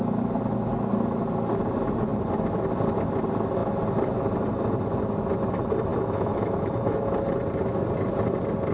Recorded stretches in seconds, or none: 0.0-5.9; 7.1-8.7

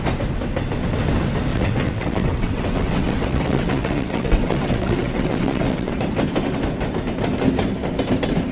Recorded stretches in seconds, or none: 0.0-1.5; 5.9-8.5

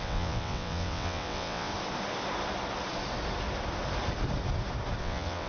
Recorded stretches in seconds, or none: 1.7-5.0

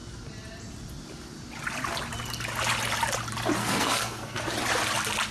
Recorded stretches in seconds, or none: 0.0-3.6; 4.4-5.3

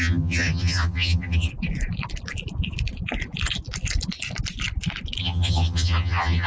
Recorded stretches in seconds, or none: 1.5-5.2